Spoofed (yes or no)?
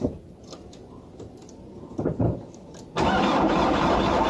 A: no